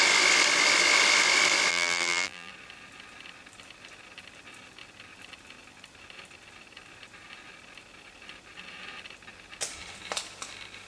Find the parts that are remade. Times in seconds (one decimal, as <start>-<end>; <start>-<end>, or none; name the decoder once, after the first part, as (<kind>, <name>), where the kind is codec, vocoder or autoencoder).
1.7-2.5 (vocoder, BigVGAN v2)